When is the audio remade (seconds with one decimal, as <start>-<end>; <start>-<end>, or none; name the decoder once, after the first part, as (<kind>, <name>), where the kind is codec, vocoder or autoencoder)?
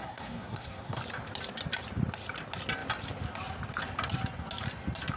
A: 0.0-1.0 (codec, SNAC)